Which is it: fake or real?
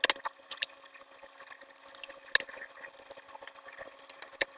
real